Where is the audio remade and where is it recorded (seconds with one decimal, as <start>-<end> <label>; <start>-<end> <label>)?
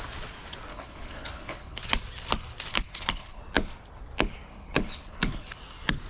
0.0-0.7 recorded; 0.7-1.8 remade; 1.8-2.7 recorded; 2.7-3.4 remade; 3.4-4.5 recorded; 4.5-5.6 remade; 5.6-6.1 recorded